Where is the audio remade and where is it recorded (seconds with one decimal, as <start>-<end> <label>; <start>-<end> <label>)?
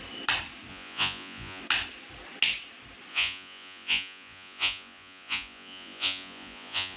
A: 0.0-0.7 recorded; 0.7-1.6 remade; 1.6-3.1 recorded; 3.1-7.0 remade